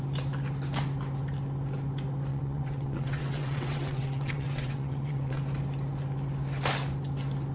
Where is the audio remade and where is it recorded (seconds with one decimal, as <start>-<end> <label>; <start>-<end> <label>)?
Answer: 0.0-2.3 recorded; 2.3-5.4 remade; 5.4-7.5 recorded